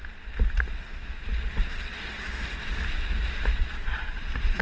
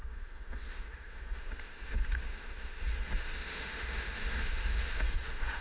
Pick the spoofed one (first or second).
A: second